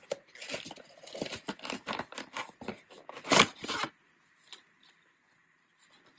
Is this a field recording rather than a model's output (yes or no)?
yes